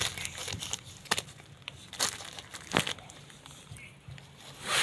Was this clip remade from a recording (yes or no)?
no